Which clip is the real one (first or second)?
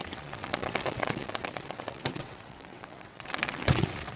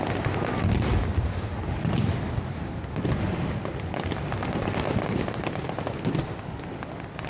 second